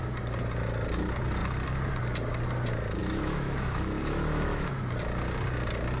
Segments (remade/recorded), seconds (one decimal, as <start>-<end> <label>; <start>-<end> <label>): 0.0-3.0 recorded; 3.0-4.8 remade; 4.8-6.0 recorded